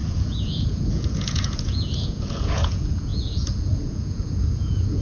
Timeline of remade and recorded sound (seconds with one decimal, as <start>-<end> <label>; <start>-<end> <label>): 0.0-5.0 remade